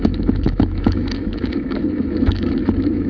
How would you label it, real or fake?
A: fake